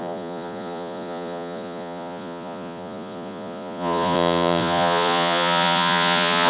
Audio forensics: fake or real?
fake